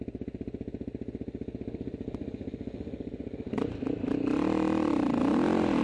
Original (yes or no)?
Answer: yes